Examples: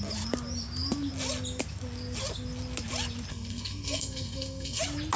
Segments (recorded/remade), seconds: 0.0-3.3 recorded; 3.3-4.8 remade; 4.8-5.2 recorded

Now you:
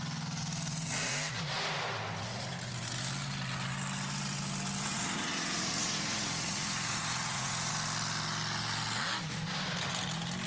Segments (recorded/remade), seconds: 0.0-4.9 recorded; 4.9-7.7 remade; 7.7-10.5 recorded

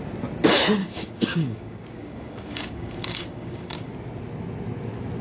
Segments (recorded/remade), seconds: 0.0-0.8 recorded; 0.8-3.9 remade; 3.9-5.2 recorded

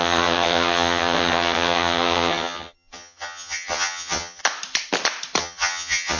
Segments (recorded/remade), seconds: 0.0-4.4 remade; 4.4-5.4 recorded; 5.4-6.2 remade

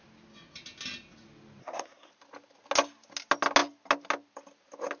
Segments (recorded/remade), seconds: 0.0-1.6 recorded; 1.6-2.1 remade; 2.1-5.0 recorded